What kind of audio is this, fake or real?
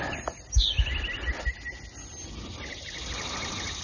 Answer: real